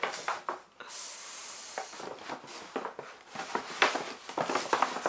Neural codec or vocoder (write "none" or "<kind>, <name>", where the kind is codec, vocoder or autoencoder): none